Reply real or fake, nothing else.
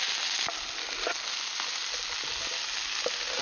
real